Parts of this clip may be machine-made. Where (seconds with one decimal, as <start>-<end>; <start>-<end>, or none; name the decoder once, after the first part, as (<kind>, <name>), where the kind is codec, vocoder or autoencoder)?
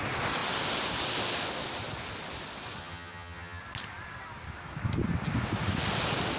2.8-3.6 (vocoder, HiFi-GAN)